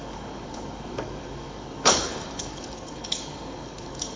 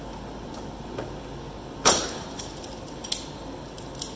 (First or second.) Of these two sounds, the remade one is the first